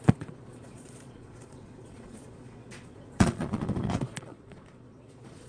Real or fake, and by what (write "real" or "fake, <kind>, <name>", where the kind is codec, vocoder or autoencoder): fake, vocoder, Vocos